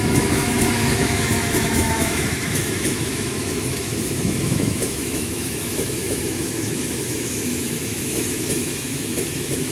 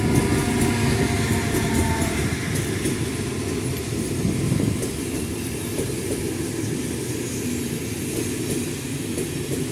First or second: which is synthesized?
first